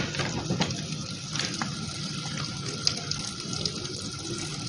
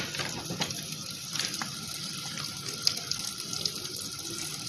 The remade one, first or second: second